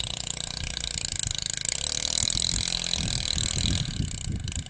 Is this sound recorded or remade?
recorded